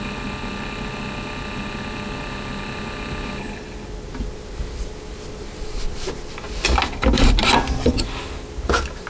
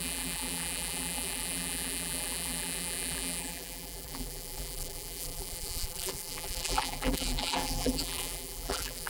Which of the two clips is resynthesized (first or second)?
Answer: second